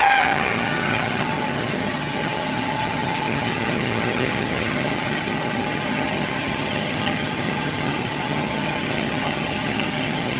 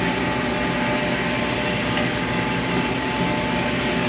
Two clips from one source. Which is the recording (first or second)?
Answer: second